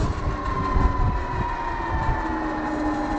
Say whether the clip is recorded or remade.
recorded